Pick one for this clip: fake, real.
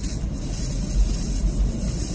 real